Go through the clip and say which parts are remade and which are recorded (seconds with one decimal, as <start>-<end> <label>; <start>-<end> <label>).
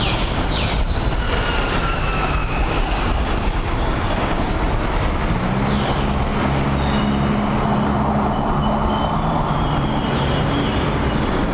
0.0-2.4 recorded; 2.4-4.6 remade; 4.6-11.5 recorded